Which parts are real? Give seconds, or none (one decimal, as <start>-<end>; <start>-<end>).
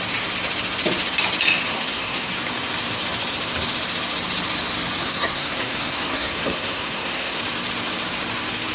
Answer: 0.0-1.7; 2.3-5.0; 7.4-8.7